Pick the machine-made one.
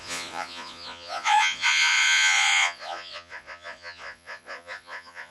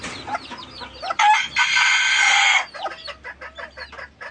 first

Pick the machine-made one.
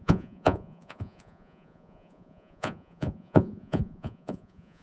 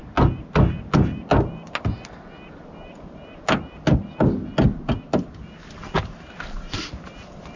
first